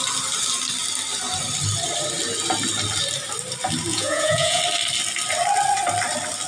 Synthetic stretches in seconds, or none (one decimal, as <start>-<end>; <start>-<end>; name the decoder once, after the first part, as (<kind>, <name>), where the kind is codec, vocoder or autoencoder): 3.9-4.6 (vocoder, Vocos)